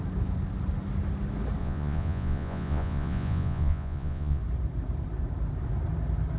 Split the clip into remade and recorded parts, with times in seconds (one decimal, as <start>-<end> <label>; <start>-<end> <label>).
0.0-1.6 recorded; 1.6-4.4 remade; 4.4-6.4 recorded